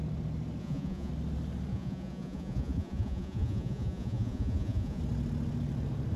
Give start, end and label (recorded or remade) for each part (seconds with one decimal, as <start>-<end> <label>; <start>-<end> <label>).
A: 0.0-0.6 recorded; 0.6-1.1 remade; 1.1-1.7 recorded; 1.7-5.0 remade; 5.0-6.2 recorded